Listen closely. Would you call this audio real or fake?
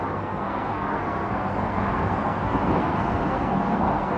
fake